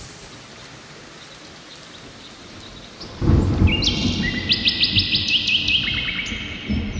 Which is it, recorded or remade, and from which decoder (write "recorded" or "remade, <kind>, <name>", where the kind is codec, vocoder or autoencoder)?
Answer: recorded